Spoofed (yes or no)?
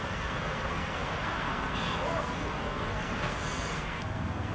yes